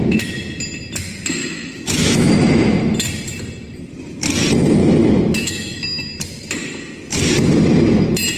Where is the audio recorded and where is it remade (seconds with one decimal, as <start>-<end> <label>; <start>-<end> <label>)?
0.0-1.4 recorded; 1.4-2.3 remade; 2.3-4.8 recorded; 4.8-6.1 remade; 6.1-8.4 recorded